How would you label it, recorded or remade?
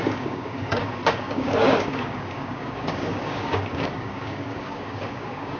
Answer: remade